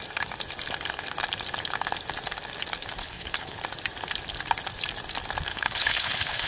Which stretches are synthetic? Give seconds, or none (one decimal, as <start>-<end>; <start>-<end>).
3.0-3.6; 5.5-6.5